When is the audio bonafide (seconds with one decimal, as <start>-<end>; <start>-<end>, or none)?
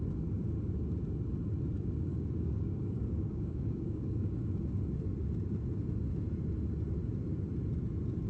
0.0-2.1; 4.5-8.3